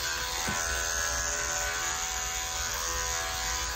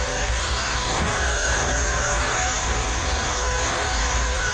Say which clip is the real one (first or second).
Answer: first